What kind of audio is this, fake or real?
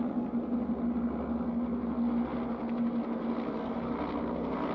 real